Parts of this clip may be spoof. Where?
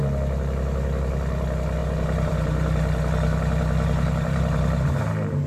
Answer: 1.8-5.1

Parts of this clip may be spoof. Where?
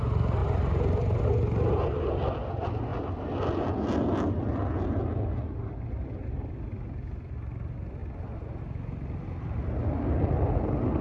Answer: none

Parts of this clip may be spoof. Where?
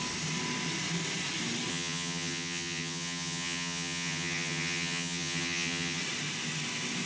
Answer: 1.7-6.0